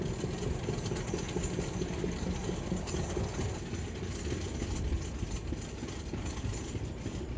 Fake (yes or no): no